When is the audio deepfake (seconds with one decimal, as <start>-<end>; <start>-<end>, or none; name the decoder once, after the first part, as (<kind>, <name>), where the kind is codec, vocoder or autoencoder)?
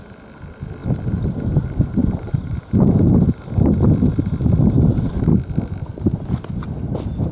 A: 2.0-3.1 (vocoder, BigVGAN v2)